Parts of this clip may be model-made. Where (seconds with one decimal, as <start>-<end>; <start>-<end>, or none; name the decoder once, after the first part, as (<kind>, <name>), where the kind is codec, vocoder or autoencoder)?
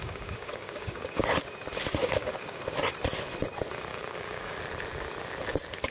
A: 0.0-1.2 (codec, DAC); 2.0-2.6; 3.9-4.6